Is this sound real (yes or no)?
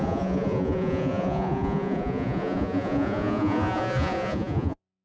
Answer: no